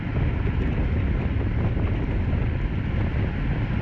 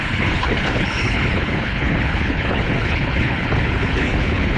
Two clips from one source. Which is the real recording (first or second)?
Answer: first